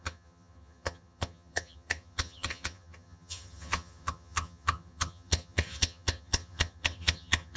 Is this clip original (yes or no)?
no